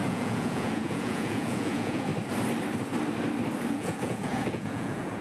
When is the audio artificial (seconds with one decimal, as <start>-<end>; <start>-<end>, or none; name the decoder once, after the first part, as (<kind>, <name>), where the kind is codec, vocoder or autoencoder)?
0.0-2.1 (vocoder, Vocos); 3.7-5.2